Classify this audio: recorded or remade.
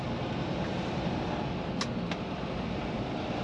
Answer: recorded